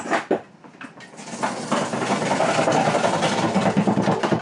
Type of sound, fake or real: real